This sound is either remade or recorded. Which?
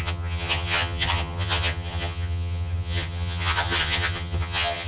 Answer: remade